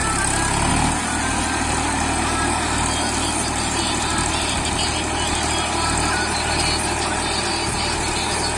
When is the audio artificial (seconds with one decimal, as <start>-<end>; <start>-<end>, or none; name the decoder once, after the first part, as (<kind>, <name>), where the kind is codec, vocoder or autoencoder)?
none